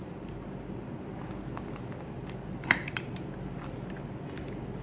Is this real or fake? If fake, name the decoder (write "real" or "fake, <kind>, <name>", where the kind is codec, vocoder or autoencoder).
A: real